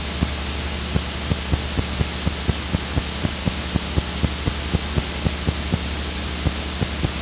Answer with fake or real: real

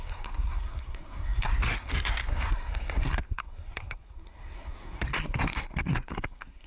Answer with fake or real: fake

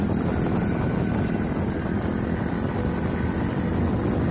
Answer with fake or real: real